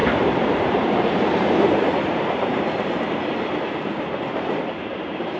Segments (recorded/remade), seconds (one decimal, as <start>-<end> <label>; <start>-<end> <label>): 0.0-3.2 remade; 3.2-4.9 recorded; 4.9-5.4 remade